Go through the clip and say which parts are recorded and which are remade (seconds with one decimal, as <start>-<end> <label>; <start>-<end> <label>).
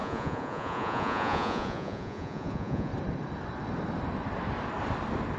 0.0-2.9 remade; 2.9-5.4 recorded